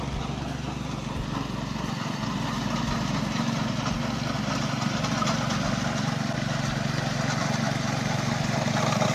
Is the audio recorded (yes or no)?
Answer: yes